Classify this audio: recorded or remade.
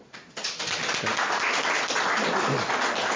recorded